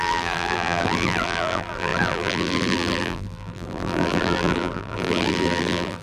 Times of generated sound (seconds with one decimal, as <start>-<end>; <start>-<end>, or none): 0.0-6.0